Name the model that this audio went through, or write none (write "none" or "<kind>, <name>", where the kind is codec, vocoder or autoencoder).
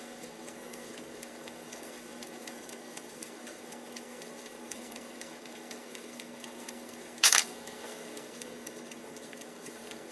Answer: codec, SNAC